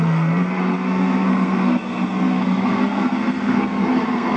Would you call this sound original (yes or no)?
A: no